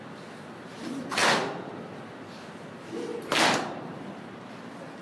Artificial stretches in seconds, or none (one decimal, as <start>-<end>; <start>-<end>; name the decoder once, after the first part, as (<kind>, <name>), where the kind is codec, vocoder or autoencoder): none